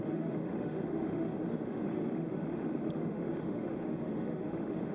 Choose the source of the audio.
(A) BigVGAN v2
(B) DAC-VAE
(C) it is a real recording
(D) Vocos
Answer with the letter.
B